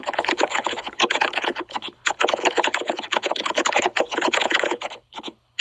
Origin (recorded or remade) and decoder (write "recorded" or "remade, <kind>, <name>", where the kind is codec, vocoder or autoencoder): remade, codec, HILCodec